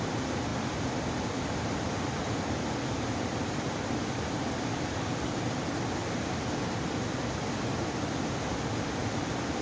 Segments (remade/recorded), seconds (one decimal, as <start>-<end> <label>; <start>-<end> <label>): 0.0-6.0 remade; 6.0-7.2 recorded; 7.2-9.6 remade